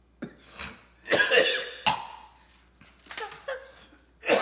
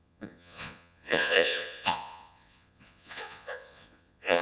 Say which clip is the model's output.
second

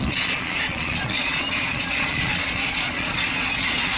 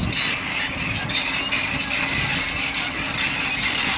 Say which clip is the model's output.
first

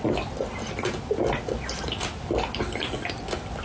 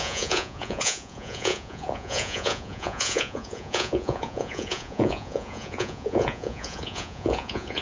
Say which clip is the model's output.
second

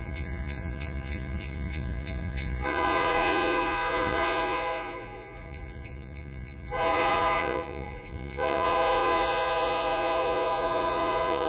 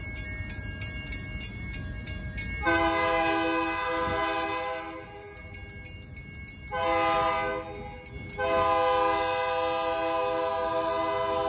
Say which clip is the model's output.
first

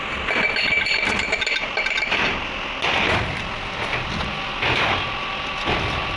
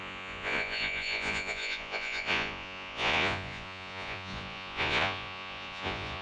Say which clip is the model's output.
second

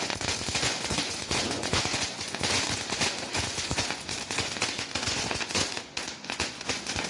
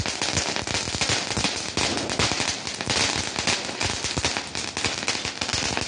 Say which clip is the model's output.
first